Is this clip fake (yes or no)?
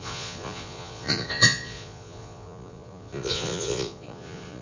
yes